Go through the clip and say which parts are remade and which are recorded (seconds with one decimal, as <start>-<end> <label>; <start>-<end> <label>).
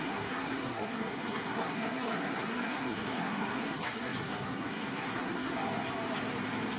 0.0-5.6 remade; 5.6-6.8 recorded